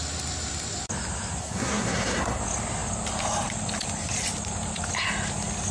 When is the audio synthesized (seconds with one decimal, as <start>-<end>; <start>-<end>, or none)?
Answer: 1.4-2.4